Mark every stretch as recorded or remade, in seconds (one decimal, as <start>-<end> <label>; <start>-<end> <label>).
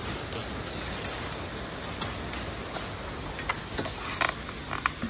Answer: 0.0-5.1 recorded